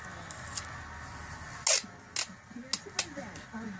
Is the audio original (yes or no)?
yes